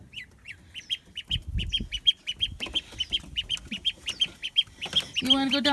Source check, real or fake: real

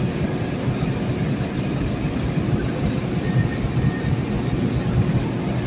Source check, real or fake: real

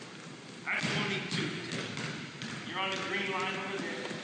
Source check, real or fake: real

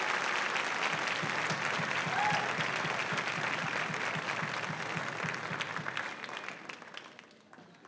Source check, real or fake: real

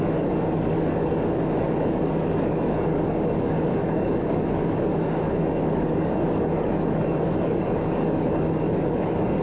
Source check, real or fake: fake